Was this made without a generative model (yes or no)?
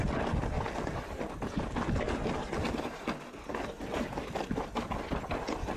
yes